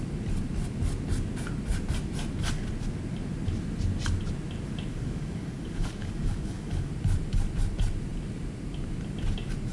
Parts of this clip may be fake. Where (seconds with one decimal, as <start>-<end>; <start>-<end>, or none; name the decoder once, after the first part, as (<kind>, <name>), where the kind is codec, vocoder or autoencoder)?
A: 4.9-6.9 (codec, DAC)